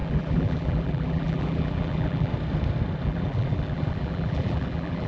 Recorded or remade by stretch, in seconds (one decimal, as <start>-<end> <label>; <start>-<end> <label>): 0.0-2.3 remade; 2.3-3.0 recorded; 3.0-5.1 remade